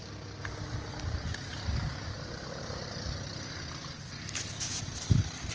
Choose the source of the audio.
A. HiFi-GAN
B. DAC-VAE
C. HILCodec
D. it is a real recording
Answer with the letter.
D